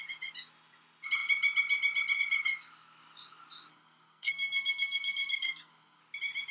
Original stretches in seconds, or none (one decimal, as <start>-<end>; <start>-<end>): 0.0-3.7; 6.0-6.5